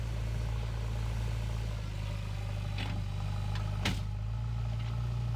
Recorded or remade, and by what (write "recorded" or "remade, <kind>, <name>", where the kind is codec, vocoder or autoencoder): recorded